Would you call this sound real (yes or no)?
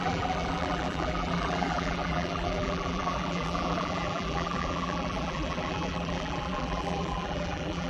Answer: no